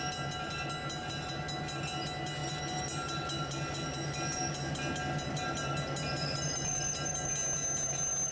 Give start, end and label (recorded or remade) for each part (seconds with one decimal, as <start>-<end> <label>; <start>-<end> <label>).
0.0-8.3 recorded